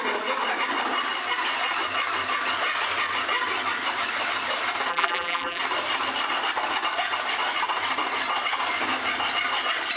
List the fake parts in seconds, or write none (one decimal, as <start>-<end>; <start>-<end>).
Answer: 4.9-5.6